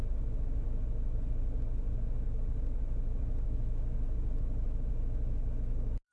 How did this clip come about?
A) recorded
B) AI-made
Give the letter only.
A